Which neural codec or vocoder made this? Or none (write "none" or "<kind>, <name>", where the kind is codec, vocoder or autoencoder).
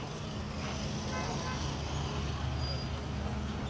none